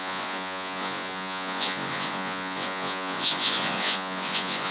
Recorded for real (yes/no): no